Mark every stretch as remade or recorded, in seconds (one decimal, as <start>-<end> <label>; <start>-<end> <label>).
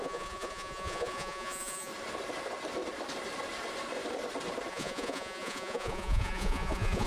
0.0-1.9 remade; 1.9-4.7 recorded; 4.7-7.1 remade